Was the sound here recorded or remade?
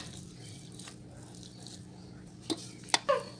recorded